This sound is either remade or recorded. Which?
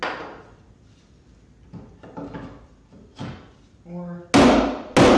recorded